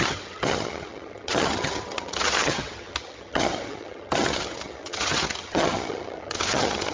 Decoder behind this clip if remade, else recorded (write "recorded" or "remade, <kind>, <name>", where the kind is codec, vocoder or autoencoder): remade, vocoder, HiFi-GAN